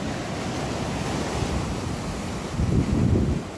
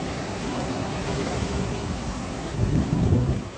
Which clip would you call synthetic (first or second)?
second